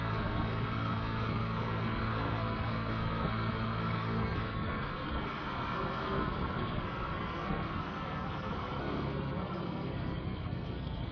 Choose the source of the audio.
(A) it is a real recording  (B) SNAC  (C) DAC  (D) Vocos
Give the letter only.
B